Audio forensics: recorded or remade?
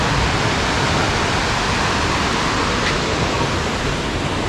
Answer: recorded